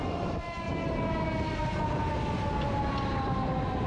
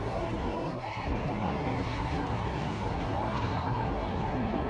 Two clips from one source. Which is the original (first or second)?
first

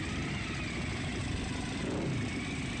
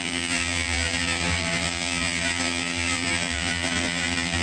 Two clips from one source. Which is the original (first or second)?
first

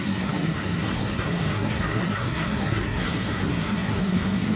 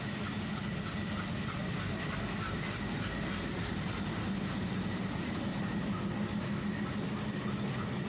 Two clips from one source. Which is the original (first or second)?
second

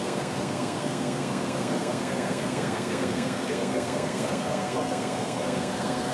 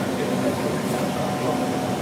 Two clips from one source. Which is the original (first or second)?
second